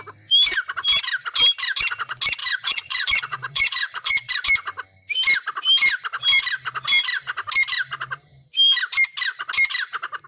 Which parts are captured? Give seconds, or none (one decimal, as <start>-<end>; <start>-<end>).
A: 0.0-2.4; 4.3-10.3